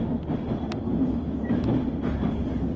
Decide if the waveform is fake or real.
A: real